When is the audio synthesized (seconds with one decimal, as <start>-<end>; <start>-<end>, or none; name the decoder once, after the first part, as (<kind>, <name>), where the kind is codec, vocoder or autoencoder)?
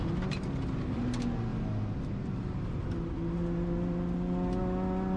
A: none